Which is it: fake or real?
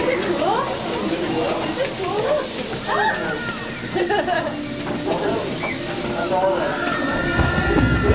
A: real